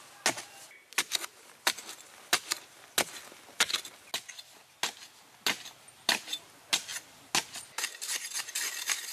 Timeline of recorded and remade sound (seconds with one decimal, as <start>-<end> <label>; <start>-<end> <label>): 0.0-9.1 recorded